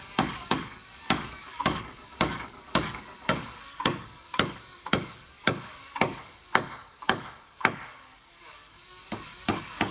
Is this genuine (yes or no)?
no